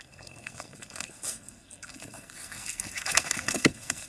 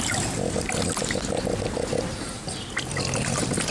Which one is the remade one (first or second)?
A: first